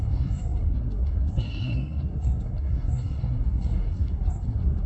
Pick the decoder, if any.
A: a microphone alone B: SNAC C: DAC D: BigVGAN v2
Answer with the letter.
B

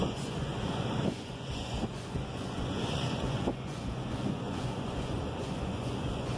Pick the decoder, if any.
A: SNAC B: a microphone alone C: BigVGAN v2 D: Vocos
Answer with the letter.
D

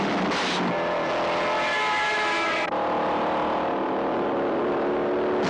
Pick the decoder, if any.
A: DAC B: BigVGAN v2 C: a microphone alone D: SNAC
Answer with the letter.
C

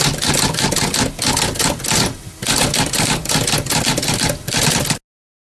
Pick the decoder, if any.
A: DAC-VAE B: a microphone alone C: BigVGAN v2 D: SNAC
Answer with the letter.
B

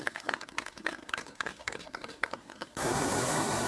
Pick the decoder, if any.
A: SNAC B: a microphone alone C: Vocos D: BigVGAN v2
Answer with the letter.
A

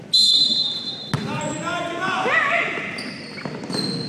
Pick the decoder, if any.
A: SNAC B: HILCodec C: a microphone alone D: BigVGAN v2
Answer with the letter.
C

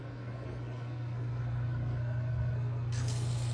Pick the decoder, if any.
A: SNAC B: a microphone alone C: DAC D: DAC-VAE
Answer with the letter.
A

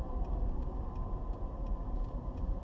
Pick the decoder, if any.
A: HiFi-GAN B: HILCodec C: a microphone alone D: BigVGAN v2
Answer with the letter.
D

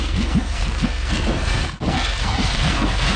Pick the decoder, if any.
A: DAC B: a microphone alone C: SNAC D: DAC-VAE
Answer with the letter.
C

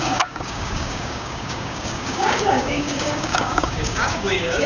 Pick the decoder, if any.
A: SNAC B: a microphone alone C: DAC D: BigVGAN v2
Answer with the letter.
C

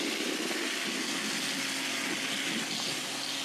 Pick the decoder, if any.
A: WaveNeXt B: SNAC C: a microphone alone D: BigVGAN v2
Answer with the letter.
C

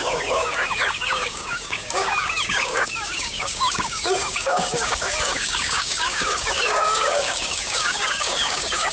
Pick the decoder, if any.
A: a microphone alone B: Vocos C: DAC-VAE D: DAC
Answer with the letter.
D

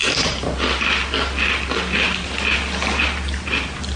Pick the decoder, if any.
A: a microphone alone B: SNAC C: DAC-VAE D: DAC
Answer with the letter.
A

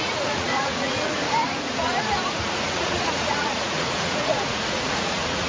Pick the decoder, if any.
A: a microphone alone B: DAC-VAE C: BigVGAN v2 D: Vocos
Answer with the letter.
D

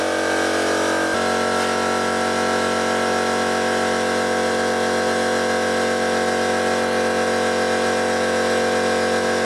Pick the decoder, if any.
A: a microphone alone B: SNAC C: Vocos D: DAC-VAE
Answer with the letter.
A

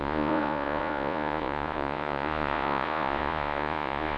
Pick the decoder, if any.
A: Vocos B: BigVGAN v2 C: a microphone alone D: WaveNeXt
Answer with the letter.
A